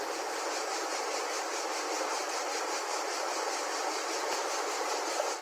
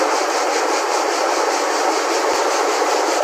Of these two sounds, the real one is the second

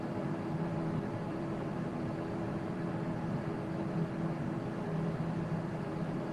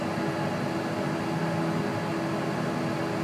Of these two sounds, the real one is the second